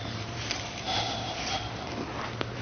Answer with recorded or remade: remade